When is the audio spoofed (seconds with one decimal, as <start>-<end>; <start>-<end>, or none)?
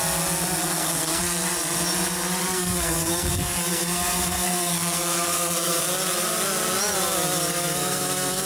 0.6-1.2; 2.4-5.8; 7.5-8.4